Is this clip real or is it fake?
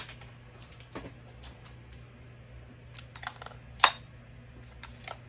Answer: real